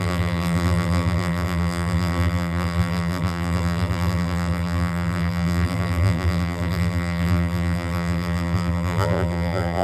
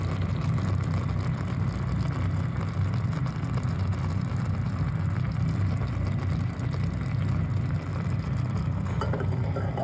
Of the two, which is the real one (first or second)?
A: second